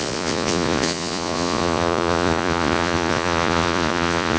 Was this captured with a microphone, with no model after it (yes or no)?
no